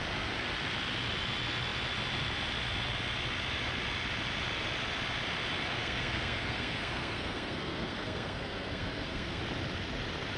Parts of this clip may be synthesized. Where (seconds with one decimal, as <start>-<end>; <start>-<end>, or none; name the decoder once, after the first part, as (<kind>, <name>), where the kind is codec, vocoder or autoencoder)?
5.8-9.4 (codec, SNAC)